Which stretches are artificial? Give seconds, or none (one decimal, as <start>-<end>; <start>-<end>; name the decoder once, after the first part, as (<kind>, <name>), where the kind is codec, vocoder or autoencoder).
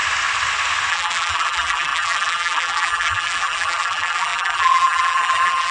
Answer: 0.9-5.7 (vocoder, BigVGAN v2)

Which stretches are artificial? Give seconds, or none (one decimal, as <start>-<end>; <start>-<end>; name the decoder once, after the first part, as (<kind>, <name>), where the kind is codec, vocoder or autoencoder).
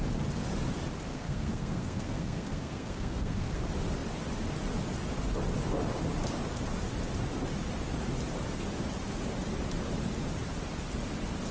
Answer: 1.1-3.6 (codec, SNAC)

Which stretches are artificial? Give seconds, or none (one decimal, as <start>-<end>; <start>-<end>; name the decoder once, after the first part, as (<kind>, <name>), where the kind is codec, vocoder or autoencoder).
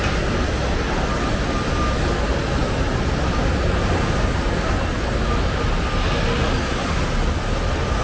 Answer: none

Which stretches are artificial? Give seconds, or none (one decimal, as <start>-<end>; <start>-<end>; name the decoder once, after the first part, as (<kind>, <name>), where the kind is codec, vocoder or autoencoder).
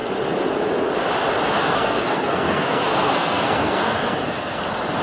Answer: 1.6-4.6 (codec, SNAC)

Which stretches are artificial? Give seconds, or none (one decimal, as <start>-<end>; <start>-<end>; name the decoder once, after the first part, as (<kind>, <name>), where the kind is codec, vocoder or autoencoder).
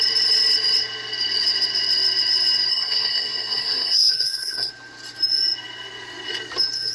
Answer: 2.7-4.7 (codec, SNAC)